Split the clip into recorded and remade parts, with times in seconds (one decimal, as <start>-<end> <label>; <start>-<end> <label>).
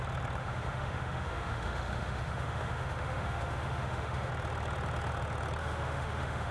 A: 0.0-0.4 recorded; 0.4-4.3 remade; 4.3-5.6 recorded; 5.6-6.5 remade